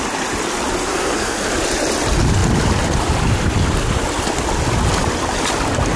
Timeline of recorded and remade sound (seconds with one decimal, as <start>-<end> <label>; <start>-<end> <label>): 0.0-0.9 recorded; 0.9-1.5 remade; 1.5-6.0 recorded